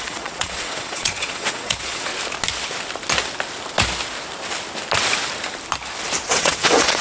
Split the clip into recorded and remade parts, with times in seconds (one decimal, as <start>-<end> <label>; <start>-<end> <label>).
0.0-2.1 remade; 2.1-6.3 recorded; 6.3-7.0 remade